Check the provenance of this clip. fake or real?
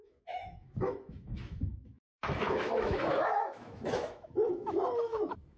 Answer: fake